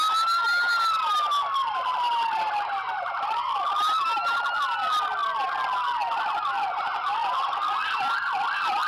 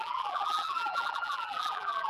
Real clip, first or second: first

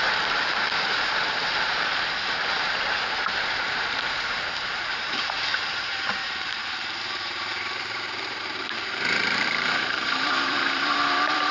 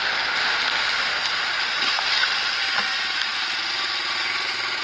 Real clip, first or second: second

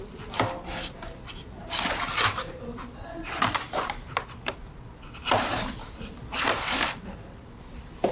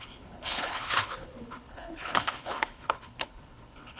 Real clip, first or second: first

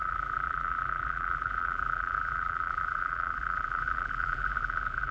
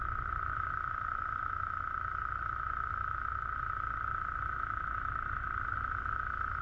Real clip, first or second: second